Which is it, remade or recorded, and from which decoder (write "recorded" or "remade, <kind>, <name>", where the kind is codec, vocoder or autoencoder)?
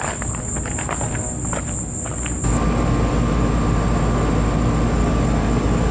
recorded